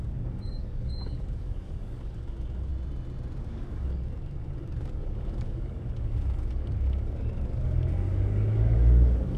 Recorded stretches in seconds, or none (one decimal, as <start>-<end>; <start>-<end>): 2.7-3.4